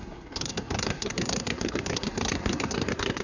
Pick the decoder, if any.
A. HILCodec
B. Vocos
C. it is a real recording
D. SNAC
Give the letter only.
D